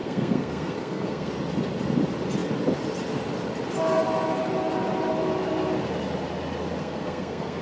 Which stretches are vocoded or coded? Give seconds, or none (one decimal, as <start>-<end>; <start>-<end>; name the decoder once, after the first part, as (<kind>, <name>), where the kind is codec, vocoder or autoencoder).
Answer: 0.0-1.3 (codec, SNAC); 6.8-7.6